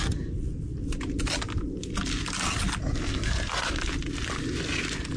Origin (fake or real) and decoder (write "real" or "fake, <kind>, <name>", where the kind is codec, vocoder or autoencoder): real